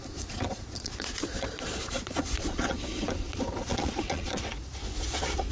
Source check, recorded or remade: remade